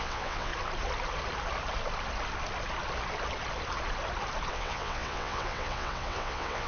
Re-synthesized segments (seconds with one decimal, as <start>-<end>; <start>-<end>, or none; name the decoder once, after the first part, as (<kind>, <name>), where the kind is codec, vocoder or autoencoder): 0.0-0.5 (vocoder, WaveNeXt); 4.5-6.7